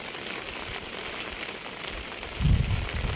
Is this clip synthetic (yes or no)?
no